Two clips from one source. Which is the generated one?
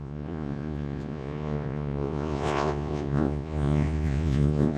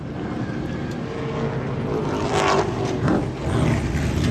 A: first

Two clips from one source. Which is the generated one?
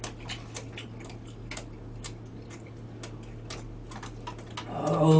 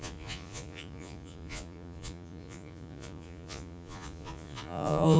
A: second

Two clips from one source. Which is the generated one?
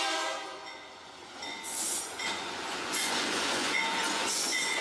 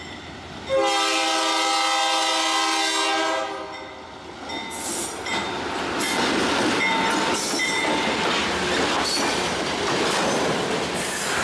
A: first